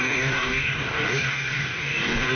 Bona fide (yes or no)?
no